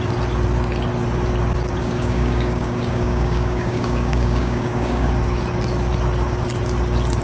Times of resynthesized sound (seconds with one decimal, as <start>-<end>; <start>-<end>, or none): 1.8-5.1

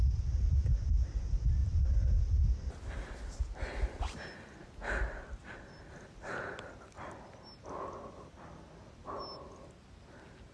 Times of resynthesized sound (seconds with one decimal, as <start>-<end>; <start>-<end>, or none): 1.6-2.2

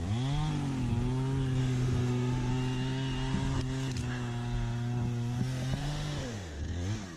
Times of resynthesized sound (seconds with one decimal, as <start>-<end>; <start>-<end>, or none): 1.6-2.5; 5.8-6.6

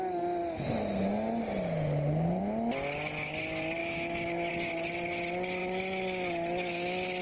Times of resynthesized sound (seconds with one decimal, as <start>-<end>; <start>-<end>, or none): 3.8-4.5; 5.6-7.2

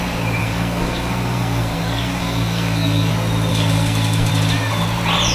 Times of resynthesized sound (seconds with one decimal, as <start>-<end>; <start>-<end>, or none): 0.4-3.1; 3.5-4.3